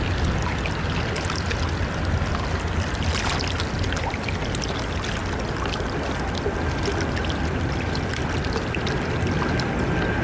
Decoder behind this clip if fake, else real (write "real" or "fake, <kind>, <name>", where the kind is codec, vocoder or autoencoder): real